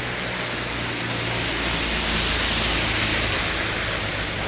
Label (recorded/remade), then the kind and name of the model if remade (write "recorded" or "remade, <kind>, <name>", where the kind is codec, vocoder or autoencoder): recorded